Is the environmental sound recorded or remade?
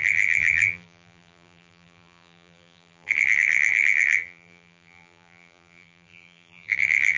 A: remade